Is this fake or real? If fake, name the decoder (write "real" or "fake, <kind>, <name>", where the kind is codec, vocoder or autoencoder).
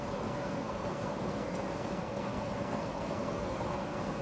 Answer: fake, codec, SNAC